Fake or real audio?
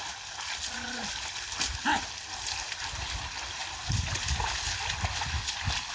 real